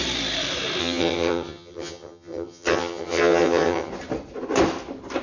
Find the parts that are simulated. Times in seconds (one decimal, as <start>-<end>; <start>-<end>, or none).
0.8-3.9